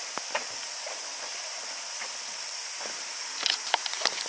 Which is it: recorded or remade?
recorded